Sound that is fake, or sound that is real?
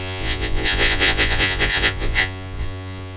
fake